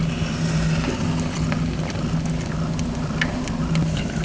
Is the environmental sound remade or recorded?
recorded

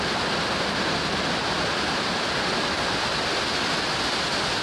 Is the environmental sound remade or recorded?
recorded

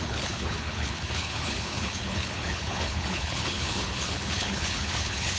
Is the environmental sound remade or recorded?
remade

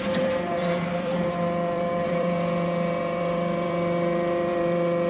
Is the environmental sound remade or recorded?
remade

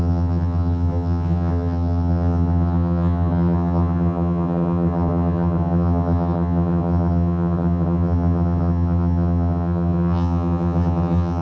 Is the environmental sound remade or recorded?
remade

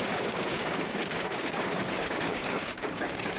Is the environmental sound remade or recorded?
remade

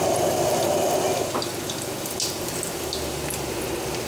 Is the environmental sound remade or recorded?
recorded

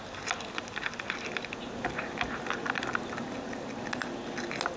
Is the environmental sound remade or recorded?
recorded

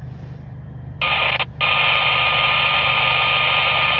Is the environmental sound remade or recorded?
recorded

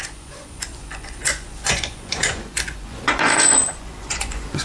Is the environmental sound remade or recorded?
remade